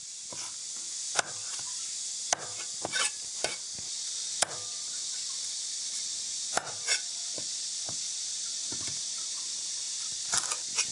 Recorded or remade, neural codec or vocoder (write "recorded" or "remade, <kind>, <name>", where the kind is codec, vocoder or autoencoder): recorded